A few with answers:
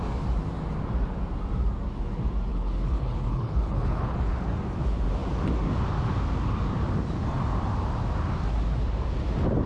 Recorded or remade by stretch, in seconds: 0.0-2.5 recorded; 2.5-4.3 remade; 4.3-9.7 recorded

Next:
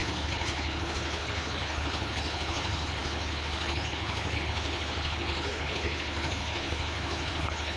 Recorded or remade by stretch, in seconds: 0.0-7.8 remade